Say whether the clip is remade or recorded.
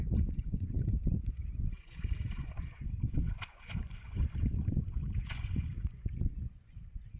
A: remade